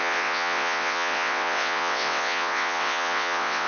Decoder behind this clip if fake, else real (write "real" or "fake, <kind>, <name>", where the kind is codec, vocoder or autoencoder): fake, vocoder, WaveNeXt